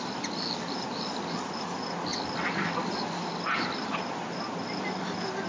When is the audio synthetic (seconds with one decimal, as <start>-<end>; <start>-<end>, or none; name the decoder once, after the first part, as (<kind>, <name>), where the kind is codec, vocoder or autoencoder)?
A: 2.1-3.9 (vocoder, BigVGAN v2)